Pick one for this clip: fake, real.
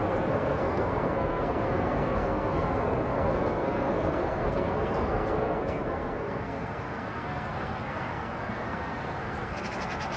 fake